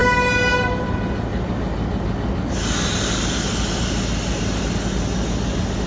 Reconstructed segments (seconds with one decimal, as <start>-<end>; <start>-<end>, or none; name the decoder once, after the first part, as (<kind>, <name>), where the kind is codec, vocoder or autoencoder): none